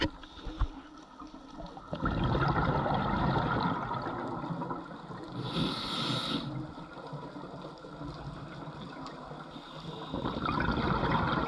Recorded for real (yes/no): yes